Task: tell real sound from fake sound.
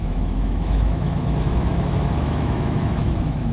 fake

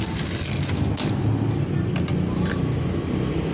real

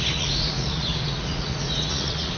fake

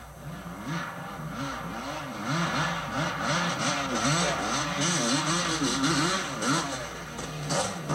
real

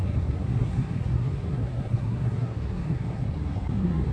fake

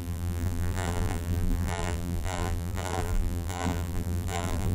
fake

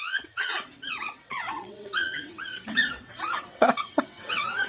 fake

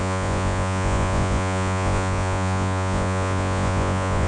fake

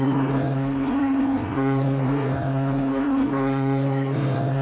fake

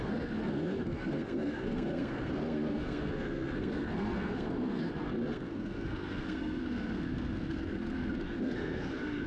fake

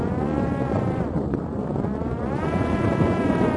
fake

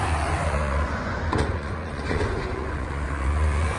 fake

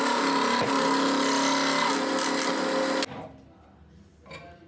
real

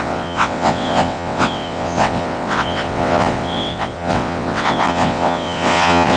fake